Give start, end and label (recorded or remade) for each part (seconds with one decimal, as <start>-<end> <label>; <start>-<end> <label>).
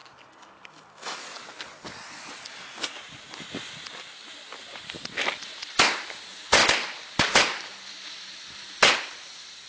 0.0-9.7 recorded